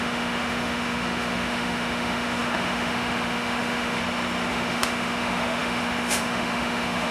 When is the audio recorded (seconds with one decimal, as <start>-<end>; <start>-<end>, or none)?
4.0-4.5